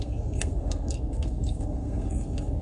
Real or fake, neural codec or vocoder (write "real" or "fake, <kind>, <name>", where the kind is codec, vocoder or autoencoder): fake, codec, SNAC